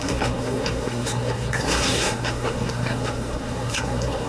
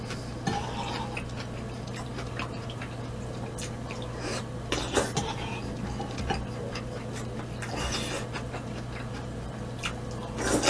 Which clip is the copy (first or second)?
first